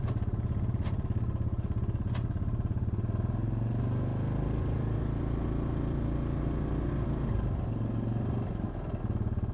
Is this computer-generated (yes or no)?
no